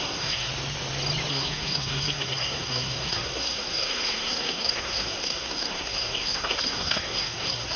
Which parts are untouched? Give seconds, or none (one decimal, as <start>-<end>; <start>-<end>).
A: 0.5-1.3